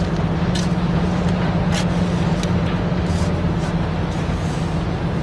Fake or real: real